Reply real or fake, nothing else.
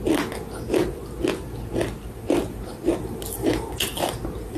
real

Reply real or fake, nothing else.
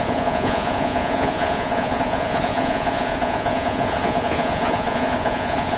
fake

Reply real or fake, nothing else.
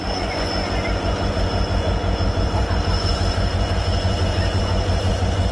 fake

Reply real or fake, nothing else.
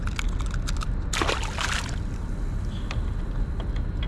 real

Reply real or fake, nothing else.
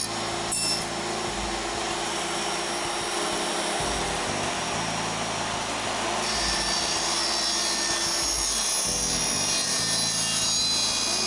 real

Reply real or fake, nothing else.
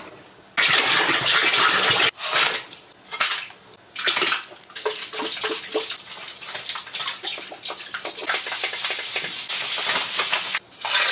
real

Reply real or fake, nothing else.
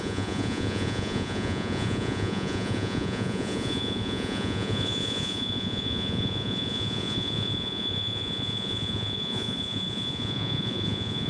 fake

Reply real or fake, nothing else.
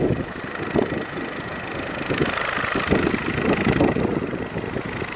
real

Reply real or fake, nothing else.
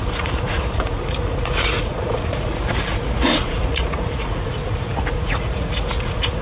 fake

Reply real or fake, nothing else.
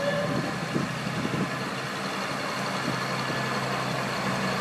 real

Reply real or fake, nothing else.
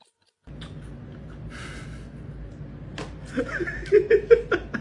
real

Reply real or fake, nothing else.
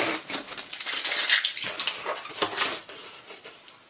real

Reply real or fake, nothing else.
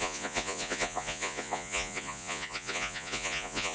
fake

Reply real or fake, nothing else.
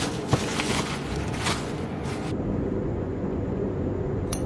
fake